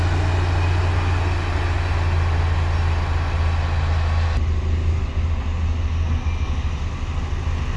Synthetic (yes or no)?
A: no